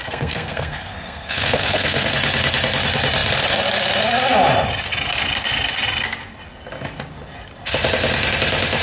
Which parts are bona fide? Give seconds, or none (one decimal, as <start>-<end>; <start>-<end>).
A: 2.1-8.8